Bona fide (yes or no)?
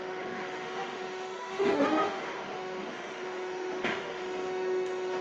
no